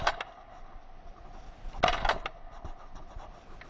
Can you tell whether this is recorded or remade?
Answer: recorded